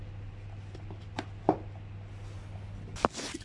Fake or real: real